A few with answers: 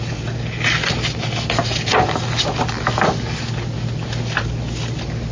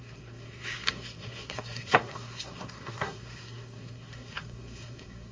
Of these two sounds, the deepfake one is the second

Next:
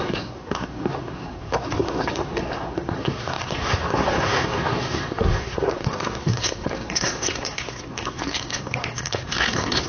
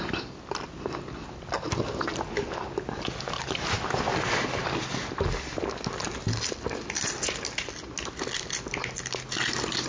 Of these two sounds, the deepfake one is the first